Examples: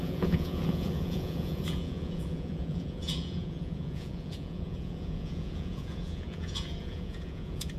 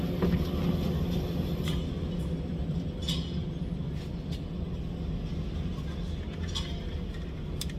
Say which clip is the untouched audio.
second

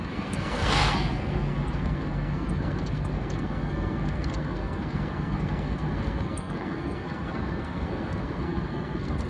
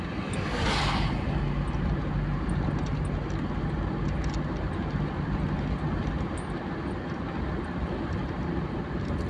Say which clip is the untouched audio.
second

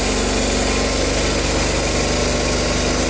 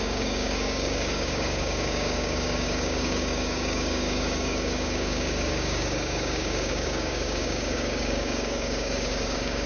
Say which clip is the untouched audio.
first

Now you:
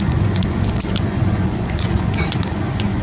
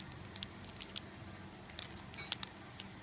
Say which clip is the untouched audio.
second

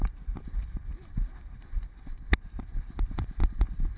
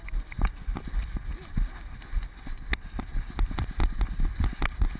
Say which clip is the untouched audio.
second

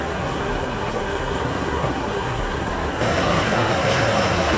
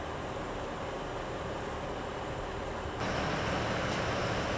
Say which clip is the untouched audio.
second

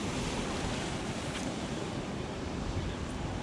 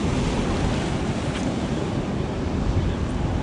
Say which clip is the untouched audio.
second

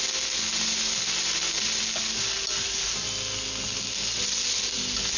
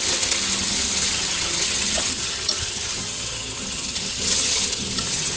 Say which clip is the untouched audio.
first